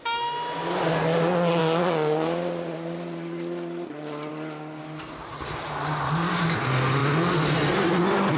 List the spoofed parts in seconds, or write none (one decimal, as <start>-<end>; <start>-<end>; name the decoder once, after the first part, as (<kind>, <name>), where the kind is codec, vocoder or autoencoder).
none